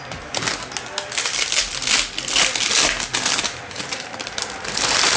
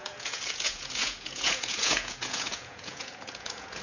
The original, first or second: first